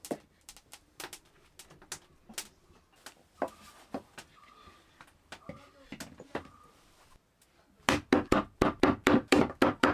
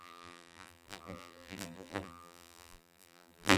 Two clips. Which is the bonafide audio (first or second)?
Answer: first